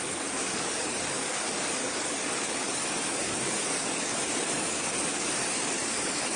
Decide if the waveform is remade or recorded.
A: remade